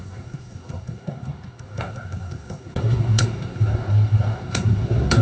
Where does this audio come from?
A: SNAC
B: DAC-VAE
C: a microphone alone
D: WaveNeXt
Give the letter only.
A